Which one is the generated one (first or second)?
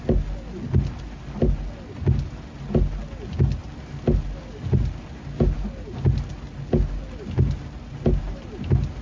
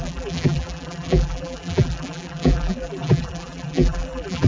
second